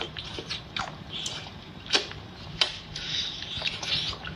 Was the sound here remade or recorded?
remade